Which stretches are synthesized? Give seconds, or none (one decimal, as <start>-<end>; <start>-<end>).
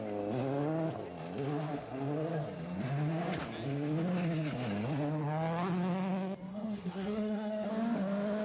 6.5-7.7